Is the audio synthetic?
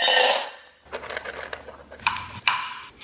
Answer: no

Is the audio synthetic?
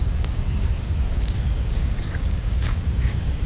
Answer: yes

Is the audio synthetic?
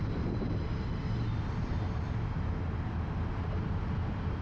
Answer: no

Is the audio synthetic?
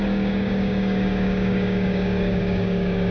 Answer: yes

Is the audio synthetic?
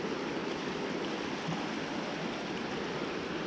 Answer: no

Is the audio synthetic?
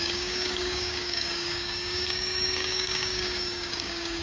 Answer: yes